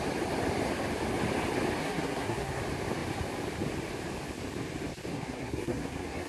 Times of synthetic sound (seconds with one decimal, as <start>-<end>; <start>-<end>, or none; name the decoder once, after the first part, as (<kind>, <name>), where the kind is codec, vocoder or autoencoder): 1.8-2.6 (codec, SNAC); 5.1-6.3